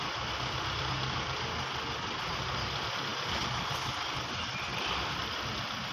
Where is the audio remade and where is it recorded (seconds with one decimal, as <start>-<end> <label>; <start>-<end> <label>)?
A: 0.0-5.9 recorded